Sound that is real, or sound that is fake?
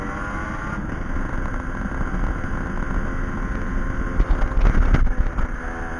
real